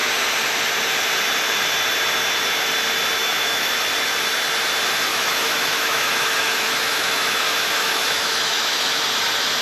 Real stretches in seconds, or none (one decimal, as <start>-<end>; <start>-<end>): 0.0-3.2; 3.8-5.1; 9.0-9.6